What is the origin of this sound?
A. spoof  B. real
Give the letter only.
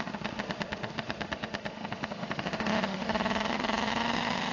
A